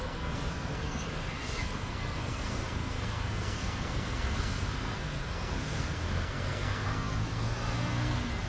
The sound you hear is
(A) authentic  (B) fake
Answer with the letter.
B